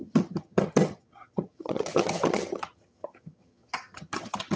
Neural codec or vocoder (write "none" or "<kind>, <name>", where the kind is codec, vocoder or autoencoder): vocoder, HiFi-GAN